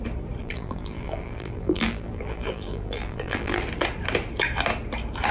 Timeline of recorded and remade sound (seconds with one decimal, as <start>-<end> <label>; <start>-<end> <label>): 0.0-0.4 recorded; 0.4-3.6 remade; 3.6-5.3 recorded